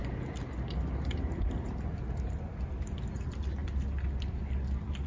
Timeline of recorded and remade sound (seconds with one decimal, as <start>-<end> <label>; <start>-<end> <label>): 0.0-5.1 recorded